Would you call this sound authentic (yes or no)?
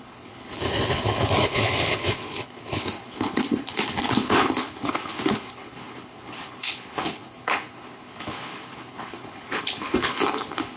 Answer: no